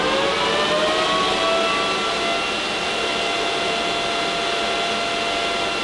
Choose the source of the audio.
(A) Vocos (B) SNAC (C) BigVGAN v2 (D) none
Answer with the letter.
D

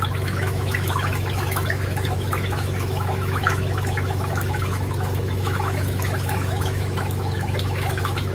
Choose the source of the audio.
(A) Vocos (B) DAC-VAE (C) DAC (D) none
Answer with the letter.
B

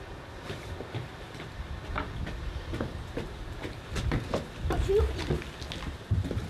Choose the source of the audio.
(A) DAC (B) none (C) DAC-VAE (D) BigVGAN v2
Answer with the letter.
B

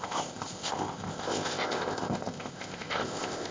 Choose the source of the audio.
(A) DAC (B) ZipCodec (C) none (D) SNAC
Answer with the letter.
B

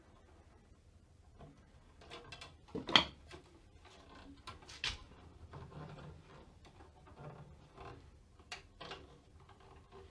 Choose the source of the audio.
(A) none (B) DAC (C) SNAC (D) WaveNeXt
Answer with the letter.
A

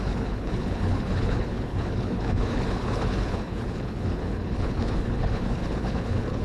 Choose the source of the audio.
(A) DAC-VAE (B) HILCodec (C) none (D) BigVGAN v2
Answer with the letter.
B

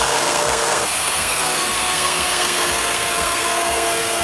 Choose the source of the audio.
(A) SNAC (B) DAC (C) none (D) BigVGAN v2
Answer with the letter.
A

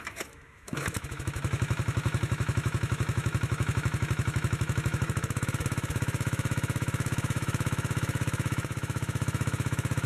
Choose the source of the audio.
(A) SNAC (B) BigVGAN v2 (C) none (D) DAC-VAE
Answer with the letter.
D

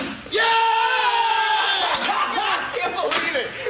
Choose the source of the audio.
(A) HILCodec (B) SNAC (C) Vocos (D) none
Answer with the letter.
D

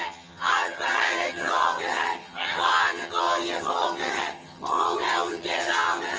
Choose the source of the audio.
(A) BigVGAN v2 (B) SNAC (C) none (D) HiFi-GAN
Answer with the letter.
D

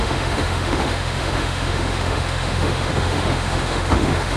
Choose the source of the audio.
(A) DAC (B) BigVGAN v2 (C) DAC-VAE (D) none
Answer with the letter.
C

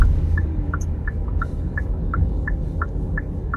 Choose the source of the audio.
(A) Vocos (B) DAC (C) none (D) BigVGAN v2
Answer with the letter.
B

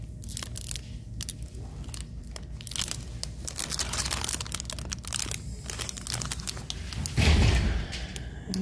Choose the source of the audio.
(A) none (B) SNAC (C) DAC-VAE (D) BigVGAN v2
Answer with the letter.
A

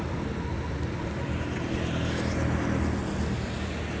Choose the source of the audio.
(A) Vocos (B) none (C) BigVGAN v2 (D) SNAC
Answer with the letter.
B